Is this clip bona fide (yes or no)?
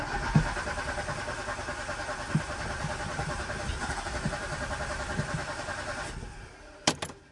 yes